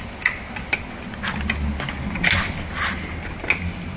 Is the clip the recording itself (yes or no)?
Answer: yes